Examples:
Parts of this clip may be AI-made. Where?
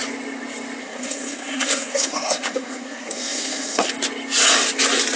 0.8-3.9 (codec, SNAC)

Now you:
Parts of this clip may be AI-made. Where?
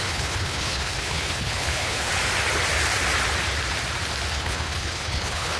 0.0-2.1 (codec, HILCodec); 4.3-5.6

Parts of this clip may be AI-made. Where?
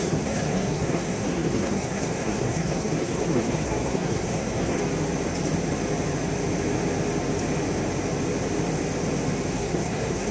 0.0-4.8 (codec, SNAC); 9.5-10.3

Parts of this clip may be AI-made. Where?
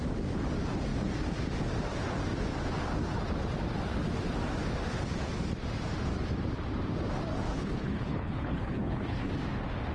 7.5-9.3 (codec, HILCodec)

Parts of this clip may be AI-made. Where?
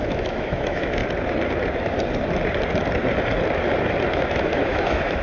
0.0-1.0 (autoencoder, DAC-VAE); 4.1-5.2